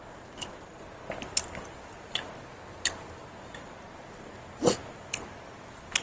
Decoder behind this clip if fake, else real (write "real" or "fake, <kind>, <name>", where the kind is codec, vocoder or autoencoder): real